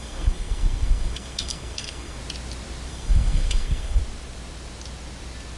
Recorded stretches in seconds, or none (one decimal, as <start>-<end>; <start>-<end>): 2.2-2.9; 4.0-5.6